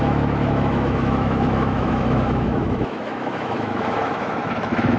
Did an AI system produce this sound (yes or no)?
yes